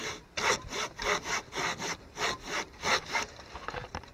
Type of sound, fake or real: real